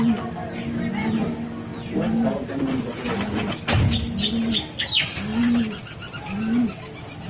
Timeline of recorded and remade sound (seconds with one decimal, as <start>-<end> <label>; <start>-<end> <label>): 0.0-7.3 recorded